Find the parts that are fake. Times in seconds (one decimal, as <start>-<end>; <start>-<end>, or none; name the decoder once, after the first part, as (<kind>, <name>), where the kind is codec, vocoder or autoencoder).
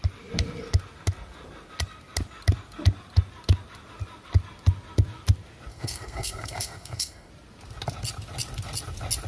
5.7-7.3 (codec, SNAC)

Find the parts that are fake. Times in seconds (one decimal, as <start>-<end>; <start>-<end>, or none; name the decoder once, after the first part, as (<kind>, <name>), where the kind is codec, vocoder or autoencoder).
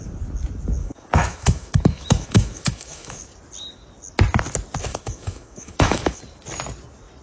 0.8-3.2 (autoencoder, DAC-VAE); 4.9-6.2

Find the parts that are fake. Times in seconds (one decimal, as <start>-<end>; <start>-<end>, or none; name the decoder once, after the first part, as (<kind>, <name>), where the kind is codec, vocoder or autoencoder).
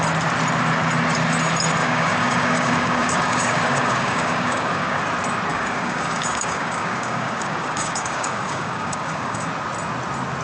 1.8-5.0 (codec, DAC); 5.5-9.5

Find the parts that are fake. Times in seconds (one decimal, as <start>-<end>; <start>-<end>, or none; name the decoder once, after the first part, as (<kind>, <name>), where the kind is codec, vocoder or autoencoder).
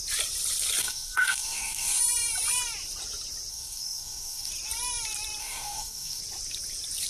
0.8-2.0 (codec, DAC); 3.5-4.5; 5.4-6.2